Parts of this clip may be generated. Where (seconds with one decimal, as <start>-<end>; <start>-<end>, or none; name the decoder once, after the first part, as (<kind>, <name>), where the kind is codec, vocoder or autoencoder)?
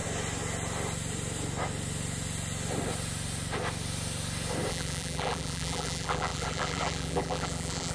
4.7-7.9 (vocoder, BigVGAN v2)